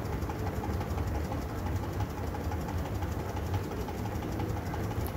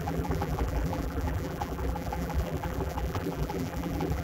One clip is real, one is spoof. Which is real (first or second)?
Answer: first